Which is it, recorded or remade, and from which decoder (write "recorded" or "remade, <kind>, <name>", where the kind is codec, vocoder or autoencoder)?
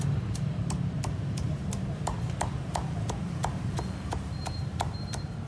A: remade, vocoder, BigVGAN v2